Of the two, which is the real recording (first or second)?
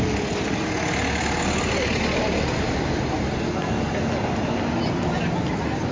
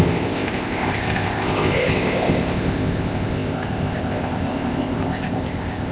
first